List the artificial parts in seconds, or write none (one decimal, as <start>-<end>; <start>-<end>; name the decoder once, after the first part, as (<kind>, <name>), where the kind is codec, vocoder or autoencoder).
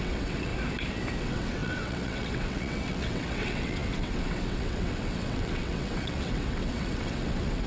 0.0-0.5 (vocoder, WaveNeXt); 1.2-7.7